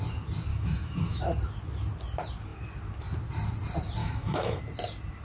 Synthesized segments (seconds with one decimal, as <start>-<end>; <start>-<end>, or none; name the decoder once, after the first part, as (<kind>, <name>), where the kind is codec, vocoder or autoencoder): 0.5-1.2 (autoencoder, DAC-VAE); 4.0-4.6